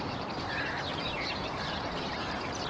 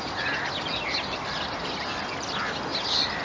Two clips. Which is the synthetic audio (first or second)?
first